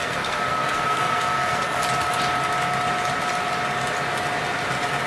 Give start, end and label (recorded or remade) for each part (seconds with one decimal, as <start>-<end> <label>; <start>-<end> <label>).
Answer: 0.0-1.8 remade; 1.8-5.1 recorded